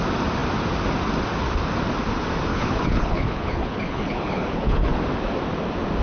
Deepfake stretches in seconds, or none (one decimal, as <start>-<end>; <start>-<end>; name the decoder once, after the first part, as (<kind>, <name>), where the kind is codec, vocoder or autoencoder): 2.5-4.9 (codec, HILCodec)